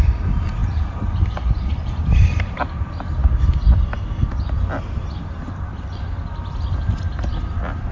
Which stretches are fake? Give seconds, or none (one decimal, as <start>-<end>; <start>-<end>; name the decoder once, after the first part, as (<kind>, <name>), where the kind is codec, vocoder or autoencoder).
0.6-2.4 (vocoder, BigVGAN v2)